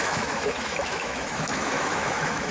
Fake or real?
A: fake